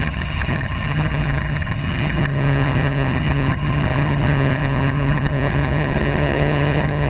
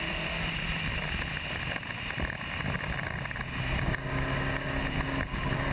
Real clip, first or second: second